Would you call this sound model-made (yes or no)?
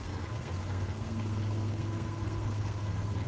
yes